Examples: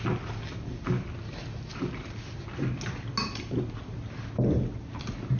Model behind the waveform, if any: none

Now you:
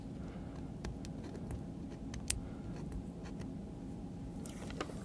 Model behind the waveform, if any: none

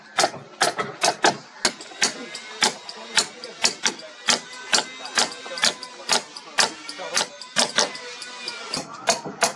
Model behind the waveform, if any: none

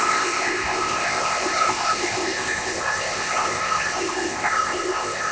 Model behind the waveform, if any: codec, ZipCodec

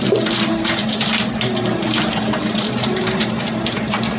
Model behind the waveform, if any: vocoder, BigVGAN v2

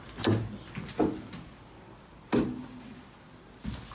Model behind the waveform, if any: none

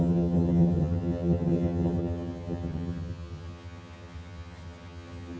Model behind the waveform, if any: vocoder, HiFi-GAN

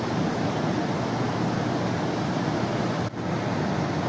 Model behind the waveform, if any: none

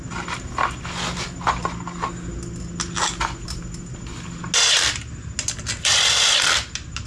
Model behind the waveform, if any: none